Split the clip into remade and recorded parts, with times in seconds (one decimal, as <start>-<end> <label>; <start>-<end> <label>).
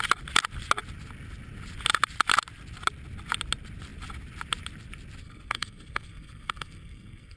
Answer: 0.0-5.2 recorded; 5.2-7.4 remade